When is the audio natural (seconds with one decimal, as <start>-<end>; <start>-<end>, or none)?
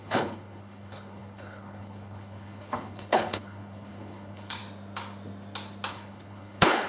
4.6-5.9